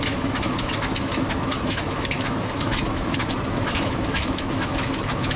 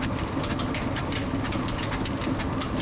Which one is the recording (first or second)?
second